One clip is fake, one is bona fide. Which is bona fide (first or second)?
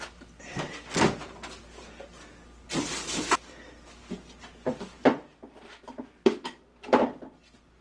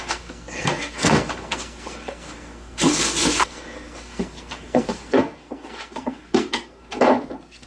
first